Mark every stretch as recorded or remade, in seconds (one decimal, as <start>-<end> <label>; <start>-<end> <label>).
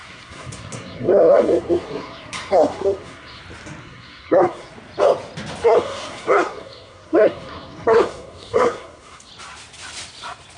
0.0-3.4 remade; 3.4-3.8 recorded; 3.8-4.7 remade; 4.7-5.6 recorded; 5.6-9.3 remade; 9.3-10.6 recorded